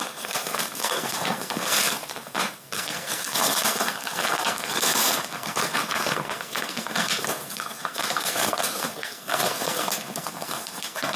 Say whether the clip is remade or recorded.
remade